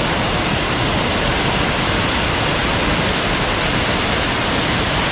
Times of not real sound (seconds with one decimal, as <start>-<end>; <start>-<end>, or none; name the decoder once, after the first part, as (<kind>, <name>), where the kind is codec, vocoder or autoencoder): none